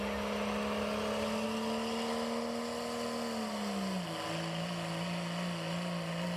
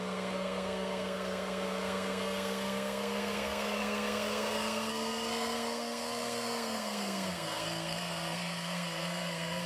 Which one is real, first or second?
first